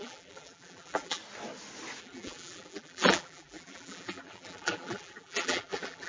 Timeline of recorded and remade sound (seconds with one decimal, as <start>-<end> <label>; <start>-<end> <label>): 0.0-1.2 remade; 1.2-2.0 recorded; 2.0-6.1 remade